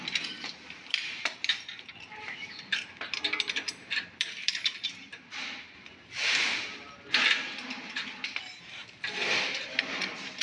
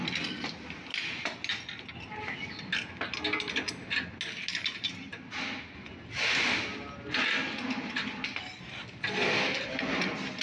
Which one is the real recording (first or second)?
second